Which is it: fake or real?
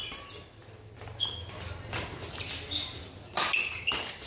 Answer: real